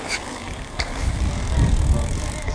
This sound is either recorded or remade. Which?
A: remade